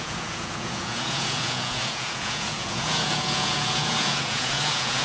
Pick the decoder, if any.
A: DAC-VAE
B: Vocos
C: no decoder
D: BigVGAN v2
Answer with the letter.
B